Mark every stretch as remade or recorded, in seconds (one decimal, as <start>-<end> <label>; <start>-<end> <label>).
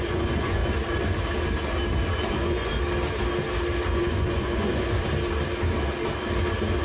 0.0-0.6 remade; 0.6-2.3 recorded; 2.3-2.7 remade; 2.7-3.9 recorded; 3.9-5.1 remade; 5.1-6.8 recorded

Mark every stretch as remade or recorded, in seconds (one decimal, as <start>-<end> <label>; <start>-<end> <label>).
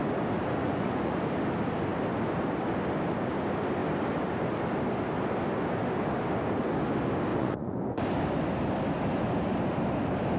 0.0-0.6 recorded; 0.6-1.3 remade; 1.3-7.3 recorded; 7.3-8.0 remade; 8.0-10.4 recorded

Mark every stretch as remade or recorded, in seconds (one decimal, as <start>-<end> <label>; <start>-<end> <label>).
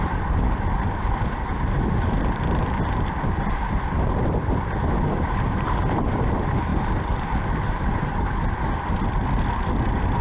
0.0-10.2 recorded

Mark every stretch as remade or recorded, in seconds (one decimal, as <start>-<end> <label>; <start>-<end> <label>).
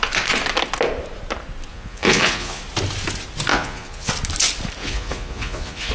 0.0-1.7 recorded; 1.7-2.6 remade; 2.6-3.5 recorded; 3.5-4.1 remade; 4.1-4.8 recorded; 4.8-5.9 remade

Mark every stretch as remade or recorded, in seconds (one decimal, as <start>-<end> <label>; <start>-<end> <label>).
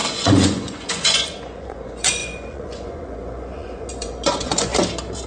0.0-4.7 remade; 4.7-5.3 recorded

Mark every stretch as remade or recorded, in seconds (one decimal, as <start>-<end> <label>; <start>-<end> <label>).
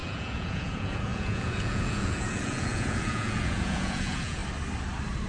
0.0-4.4 remade; 4.4-5.3 recorded